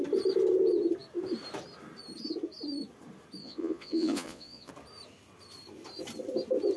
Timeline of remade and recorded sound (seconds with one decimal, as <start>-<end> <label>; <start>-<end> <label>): 0.0-3.4 recorded; 3.4-4.7 remade; 4.7-6.8 recorded